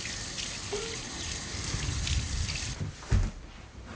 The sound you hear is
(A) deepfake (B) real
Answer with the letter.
B